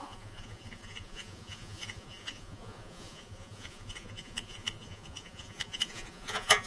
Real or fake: fake